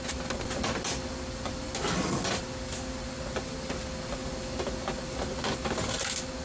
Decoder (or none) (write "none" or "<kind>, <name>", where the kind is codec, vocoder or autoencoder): none